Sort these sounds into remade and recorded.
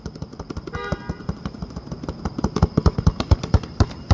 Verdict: recorded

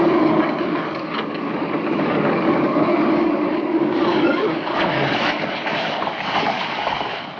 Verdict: remade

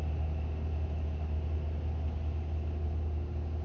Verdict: recorded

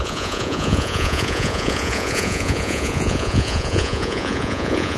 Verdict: remade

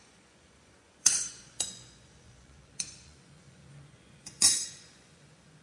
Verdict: remade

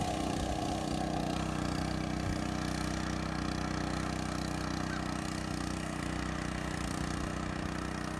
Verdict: recorded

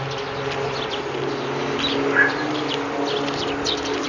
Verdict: recorded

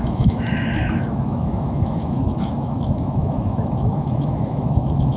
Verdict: remade